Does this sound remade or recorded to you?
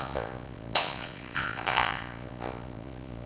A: remade